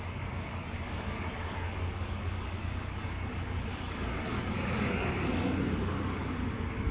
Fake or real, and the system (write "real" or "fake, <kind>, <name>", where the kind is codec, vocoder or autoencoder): fake, codec, DAC